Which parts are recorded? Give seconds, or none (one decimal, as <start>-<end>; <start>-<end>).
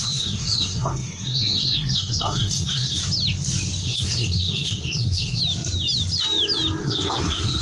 3.0-3.8; 5.4-6.8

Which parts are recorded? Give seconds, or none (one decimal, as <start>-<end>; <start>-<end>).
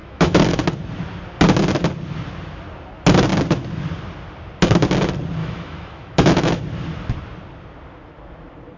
0.6-5.4; 6.6-8.8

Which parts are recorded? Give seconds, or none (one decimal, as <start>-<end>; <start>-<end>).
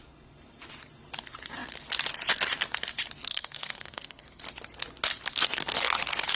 0.0-3.3; 4.4-6.4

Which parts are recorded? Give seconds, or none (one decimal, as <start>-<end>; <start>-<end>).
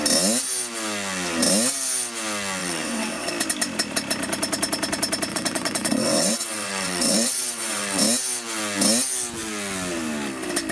0.0-2.6; 3.3-5.3; 8.0-10.7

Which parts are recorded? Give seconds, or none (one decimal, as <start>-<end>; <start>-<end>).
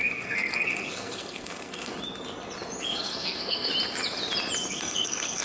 1.9-2.8; 3.7-4.7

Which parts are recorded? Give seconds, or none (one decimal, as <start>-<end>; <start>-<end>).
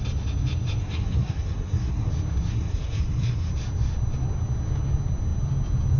0.0-0.8; 2.1-2.5; 3.5-6.0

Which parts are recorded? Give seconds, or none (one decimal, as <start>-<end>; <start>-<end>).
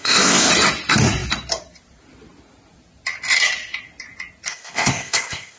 0.5-4.5